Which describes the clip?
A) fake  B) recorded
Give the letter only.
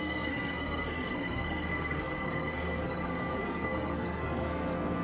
A